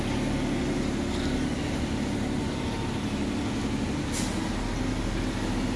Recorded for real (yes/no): yes